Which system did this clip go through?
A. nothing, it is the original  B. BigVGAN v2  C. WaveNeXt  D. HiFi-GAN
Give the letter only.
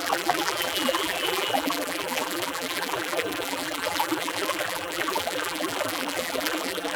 B